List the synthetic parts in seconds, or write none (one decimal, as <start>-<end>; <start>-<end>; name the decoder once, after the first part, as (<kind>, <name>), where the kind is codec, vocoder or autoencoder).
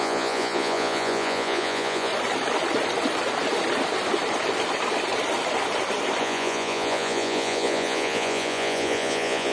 0.0-2.1 (vocoder, Vocos); 6.2-9.5